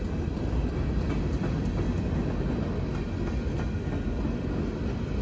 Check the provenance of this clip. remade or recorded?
recorded